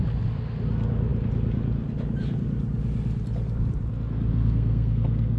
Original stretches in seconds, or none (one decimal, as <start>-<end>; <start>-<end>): 0.0-4.3